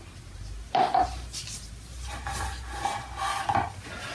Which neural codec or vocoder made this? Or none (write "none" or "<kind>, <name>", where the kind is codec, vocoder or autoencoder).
none